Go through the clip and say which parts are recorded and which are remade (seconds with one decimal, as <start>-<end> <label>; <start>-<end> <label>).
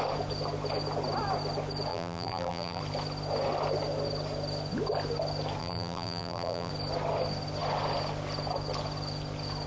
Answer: 0.0-1.9 recorded; 1.9-2.8 remade; 2.8-5.6 recorded; 5.6-6.7 remade; 6.7-9.7 recorded